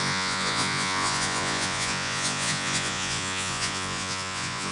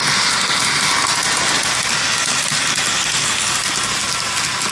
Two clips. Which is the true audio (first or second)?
second